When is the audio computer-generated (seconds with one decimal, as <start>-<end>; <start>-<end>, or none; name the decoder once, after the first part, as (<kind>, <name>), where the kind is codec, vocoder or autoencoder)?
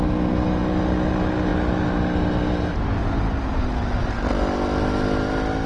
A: none